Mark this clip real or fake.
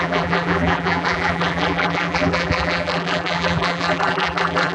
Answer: fake